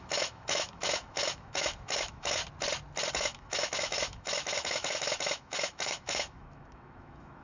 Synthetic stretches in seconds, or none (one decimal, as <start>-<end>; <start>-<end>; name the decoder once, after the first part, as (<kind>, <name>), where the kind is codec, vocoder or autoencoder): 0.0-2.4 (autoencoder, DAC-VAE); 3.1-7.4